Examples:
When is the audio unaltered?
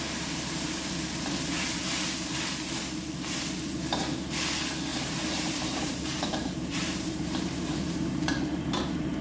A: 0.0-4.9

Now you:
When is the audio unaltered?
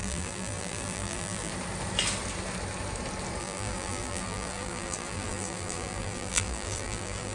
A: 1.5-3.4